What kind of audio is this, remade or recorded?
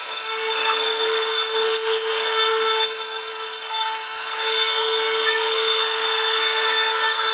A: remade